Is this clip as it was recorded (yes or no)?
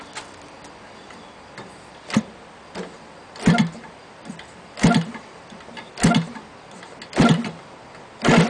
yes